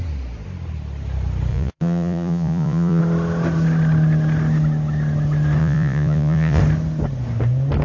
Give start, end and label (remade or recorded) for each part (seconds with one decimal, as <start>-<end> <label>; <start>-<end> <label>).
0.0-1.5 recorded; 1.5-3.0 remade; 3.0-5.6 recorded; 5.6-6.6 remade; 6.6-7.8 recorded